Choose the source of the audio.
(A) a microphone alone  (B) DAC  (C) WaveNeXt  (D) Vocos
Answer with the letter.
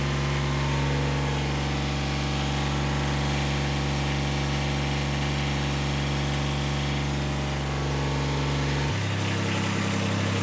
A